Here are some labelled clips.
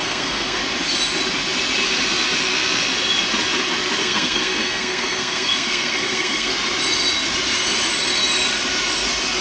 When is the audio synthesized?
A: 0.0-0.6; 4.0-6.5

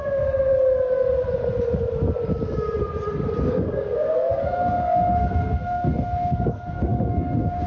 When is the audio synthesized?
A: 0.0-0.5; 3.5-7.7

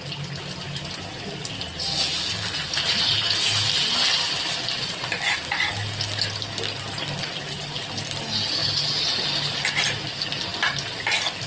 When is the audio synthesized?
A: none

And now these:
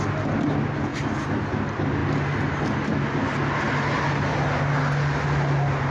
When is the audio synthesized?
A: none